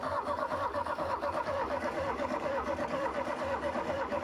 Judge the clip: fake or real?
fake